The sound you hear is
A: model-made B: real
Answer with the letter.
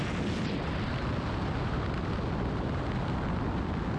B